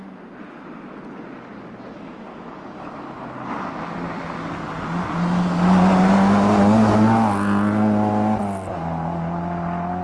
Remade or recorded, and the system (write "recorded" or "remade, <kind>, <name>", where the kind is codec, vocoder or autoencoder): recorded